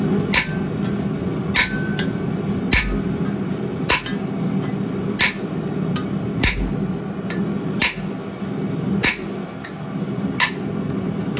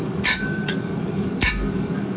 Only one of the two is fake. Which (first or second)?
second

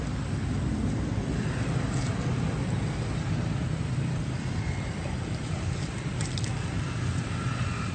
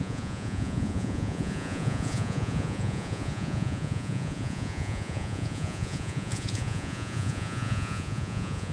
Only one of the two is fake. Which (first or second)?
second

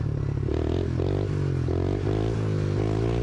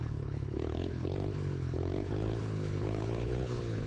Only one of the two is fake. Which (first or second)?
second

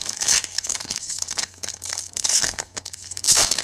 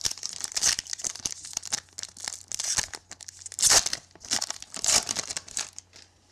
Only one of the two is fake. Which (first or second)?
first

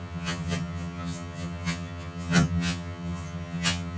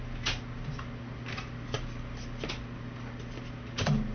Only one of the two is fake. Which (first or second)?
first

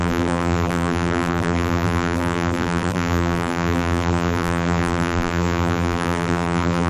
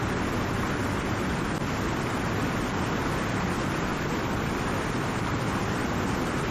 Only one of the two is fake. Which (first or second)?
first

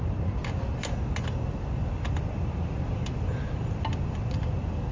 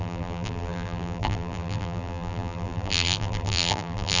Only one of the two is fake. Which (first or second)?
second